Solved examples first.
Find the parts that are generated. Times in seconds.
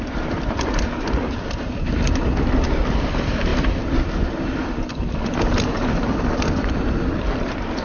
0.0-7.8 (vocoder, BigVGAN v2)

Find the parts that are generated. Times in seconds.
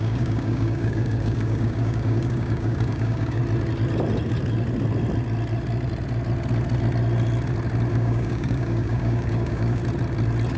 0.0-3.4 (codec, DAC); 7.9-9.8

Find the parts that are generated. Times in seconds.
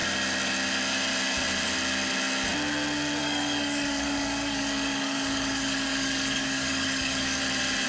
3.2-7.4 (codec, DAC)